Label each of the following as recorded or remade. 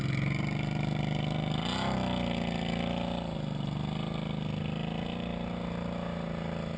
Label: recorded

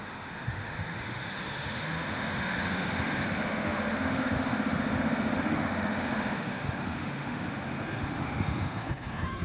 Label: remade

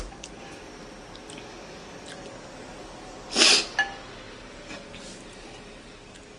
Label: recorded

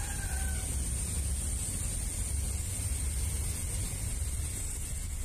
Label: recorded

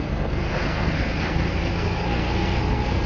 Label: remade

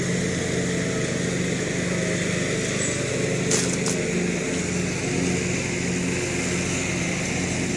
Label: recorded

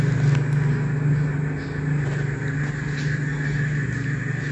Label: recorded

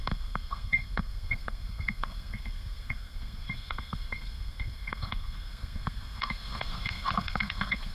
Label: remade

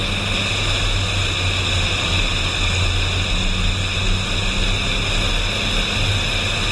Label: recorded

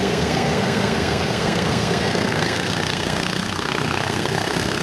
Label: remade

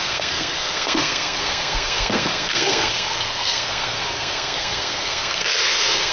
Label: remade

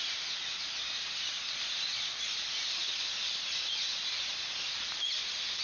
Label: recorded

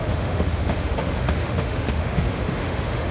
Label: remade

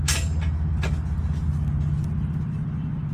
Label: recorded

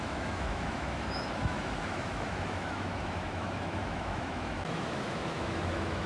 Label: remade